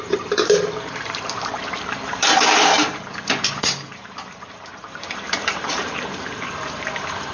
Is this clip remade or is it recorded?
remade